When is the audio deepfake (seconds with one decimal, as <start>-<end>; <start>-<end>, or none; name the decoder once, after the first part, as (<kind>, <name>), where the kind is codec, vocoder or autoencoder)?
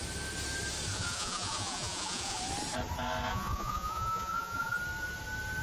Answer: 0.9-2.4 (vocoder, Vocos); 3.3-4.8